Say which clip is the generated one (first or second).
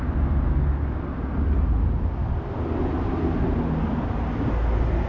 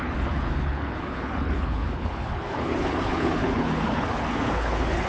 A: second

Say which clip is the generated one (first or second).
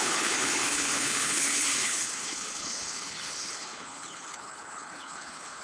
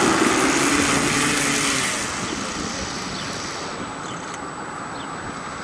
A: first